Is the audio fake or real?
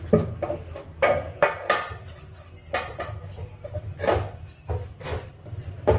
real